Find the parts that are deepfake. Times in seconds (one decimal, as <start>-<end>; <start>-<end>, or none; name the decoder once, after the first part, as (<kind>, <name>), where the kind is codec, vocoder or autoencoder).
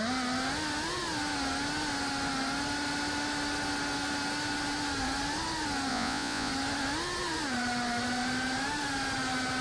5.9-6.5 (vocoder, Vocos)